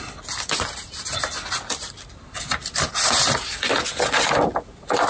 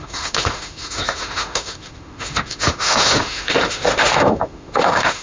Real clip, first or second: first